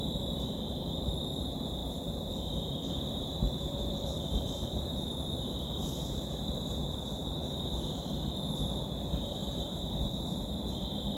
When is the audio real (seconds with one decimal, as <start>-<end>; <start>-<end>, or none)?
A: none